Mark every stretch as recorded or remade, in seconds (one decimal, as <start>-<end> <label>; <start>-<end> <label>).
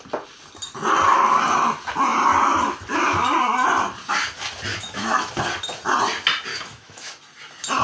0.0-4.7 recorded; 4.7-5.3 remade; 5.3-6.5 recorded; 6.5-7.1 remade; 7.1-7.8 recorded